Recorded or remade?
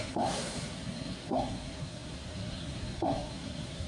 remade